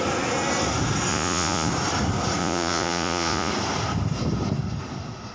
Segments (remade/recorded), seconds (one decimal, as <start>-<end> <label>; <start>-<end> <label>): 0.0-1.1 recorded; 1.1-1.7 remade; 1.7-2.4 recorded; 2.4-3.5 remade; 3.5-5.3 recorded